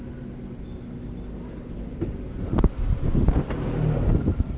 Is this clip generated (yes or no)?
no